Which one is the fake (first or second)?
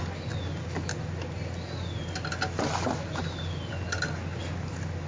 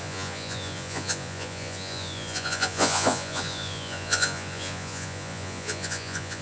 second